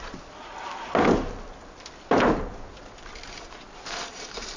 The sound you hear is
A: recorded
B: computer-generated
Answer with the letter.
A